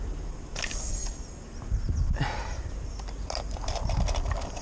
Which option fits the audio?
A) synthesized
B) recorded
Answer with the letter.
B